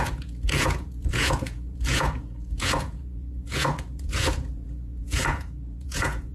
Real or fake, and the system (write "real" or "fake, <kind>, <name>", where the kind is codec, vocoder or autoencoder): fake, vocoder, Vocos